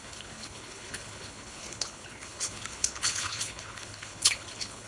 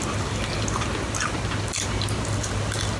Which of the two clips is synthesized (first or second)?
first